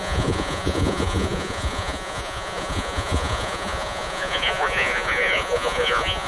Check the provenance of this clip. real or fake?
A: fake